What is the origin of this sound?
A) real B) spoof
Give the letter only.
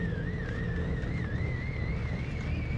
A